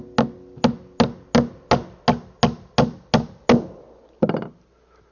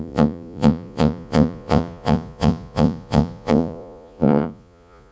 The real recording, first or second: first